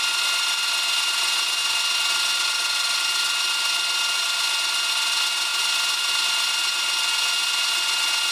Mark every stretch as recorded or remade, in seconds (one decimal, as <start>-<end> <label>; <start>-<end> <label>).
0.0-8.3 recorded